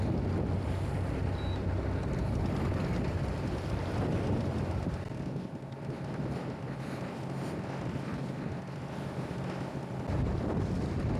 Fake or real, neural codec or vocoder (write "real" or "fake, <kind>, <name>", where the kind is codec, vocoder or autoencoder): real